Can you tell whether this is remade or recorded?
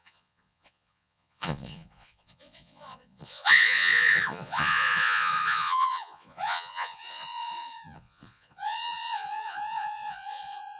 remade